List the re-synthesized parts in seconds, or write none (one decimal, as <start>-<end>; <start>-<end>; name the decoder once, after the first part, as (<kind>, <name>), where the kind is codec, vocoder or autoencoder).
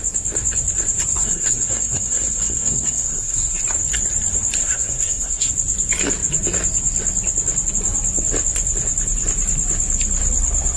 1.1-3.6 (codec, SNAC); 4.6-5.5